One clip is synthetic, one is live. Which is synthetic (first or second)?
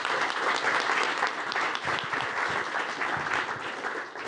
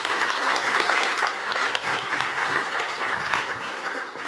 second